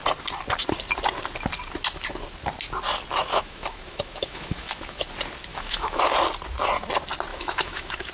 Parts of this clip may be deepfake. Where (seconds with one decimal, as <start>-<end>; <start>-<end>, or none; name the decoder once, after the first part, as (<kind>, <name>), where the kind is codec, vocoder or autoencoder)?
3.3-5.1 (autoencoder, DAC-VAE); 5.5-6.0; 7.3-8.1

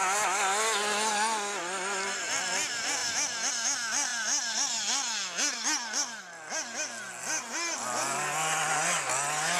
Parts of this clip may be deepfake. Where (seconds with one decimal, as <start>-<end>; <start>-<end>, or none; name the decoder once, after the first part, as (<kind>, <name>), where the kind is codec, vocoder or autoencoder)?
none

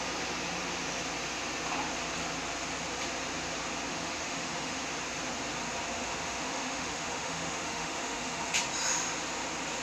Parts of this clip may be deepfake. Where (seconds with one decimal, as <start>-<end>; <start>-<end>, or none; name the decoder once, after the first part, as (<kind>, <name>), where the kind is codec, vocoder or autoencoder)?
3.9-4.8 (autoencoder, DAC-VAE); 5.9-8.6

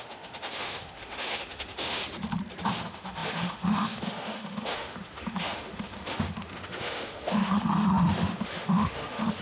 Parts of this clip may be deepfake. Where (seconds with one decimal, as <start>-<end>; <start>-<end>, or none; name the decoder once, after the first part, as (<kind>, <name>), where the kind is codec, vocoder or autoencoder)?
0.0-2.0 (autoencoder, DAC-VAE); 2.7-9.4

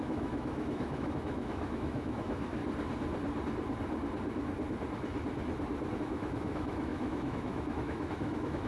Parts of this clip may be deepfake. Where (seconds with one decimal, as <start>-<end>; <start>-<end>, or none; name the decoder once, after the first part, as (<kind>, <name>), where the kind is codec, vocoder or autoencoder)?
0.0-2.6 (autoencoder, DAC-VAE); 6.0-8.7

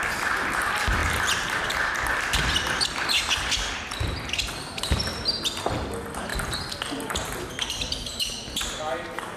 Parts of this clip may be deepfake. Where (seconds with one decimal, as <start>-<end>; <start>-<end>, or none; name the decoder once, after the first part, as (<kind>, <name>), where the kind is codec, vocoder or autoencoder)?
none